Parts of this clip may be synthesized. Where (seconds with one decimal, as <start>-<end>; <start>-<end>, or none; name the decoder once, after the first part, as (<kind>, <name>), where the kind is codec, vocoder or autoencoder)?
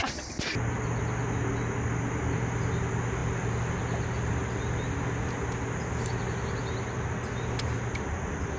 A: none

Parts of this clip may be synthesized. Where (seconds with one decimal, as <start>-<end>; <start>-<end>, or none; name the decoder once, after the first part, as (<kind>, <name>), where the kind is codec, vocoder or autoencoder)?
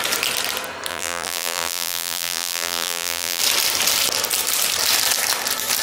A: 0.9-3.4 (vocoder, BigVGAN v2)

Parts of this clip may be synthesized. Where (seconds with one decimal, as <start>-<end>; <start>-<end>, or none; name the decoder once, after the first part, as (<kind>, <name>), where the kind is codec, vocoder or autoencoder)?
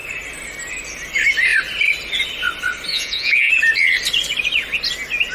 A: 2.9-3.5 (vocoder, Vocos)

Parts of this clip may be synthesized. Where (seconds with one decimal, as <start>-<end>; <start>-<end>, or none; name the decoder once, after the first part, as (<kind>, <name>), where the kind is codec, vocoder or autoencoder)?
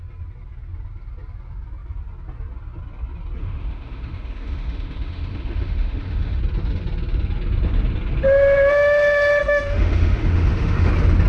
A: 3.4-6.4 (autoencoder, DAC-VAE); 9.4-10.9